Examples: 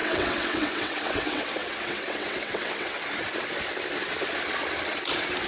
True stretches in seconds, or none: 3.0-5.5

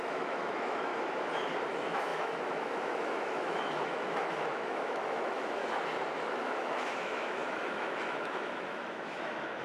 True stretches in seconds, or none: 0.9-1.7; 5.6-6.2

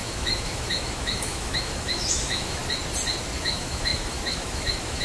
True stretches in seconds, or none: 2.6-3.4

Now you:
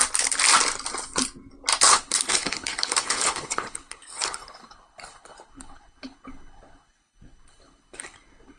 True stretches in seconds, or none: 0.0-1.8

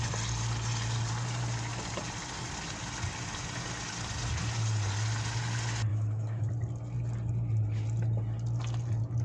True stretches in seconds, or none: 0.0-5.9; 6.5-9.2